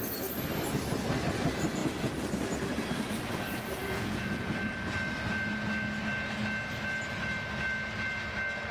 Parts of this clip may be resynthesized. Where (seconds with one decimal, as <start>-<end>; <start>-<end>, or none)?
3.8-4.5